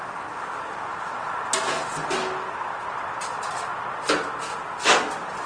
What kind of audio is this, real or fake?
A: real